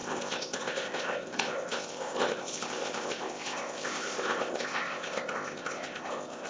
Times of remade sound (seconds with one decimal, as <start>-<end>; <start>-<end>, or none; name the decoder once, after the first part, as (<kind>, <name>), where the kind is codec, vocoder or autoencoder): 0.0-6.5 (codec, ZipCodec)